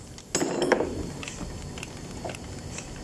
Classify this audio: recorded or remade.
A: recorded